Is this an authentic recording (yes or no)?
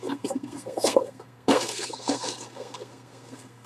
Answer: no